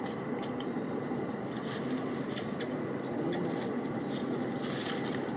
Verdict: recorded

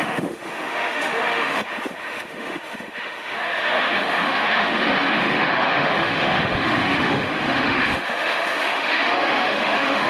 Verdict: remade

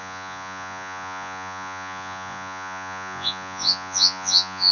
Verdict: remade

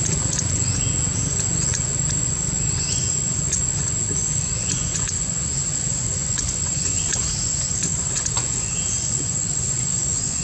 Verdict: remade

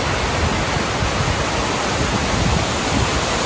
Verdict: recorded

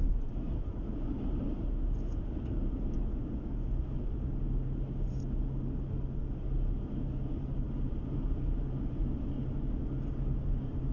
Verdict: recorded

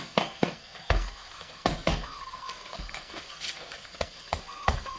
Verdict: remade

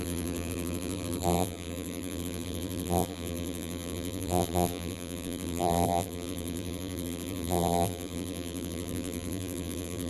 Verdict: remade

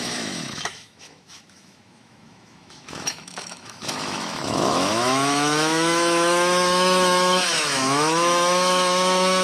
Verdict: remade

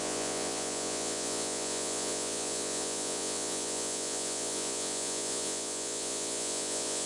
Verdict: remade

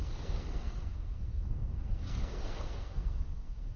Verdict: remade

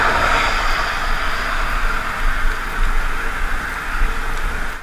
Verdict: recorded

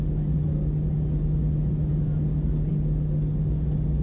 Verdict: recorded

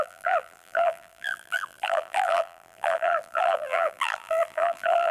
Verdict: remade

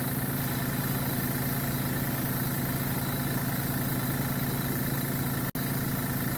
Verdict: recorded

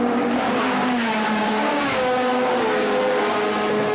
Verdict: remade